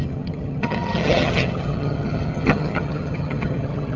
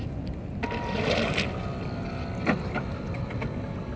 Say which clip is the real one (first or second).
second